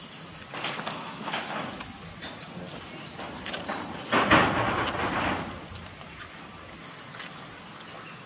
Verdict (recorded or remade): recorded